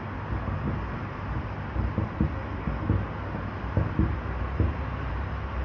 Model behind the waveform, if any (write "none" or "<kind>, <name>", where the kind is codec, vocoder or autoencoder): none